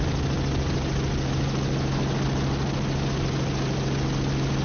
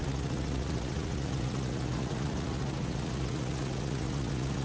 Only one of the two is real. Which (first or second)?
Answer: first